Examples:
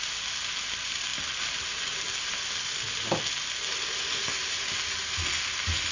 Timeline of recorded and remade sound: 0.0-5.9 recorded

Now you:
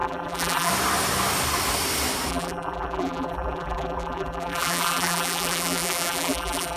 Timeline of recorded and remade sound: 0.0-0.7 remade; 0.7-2.3 recorded; 2.3-6.8 remade

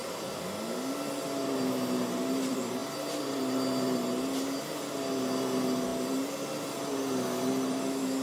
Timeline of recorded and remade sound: 0.0-8.2 recorded

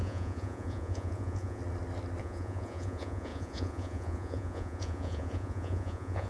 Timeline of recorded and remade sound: 0.0-1.6 remade; 1.6-2.2 recorded; 2.2-6.3 remade